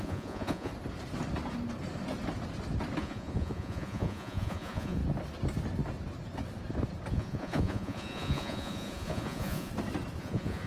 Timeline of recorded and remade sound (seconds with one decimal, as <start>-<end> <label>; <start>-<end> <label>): 0.0-0.7 remade; 0.7-3.0 recorded; 3.0-5.0 remade; 5.0-7.1 recorded; 7.1-9.7 remade; 9.7-10.2 recorded; 10.2-10.7 remade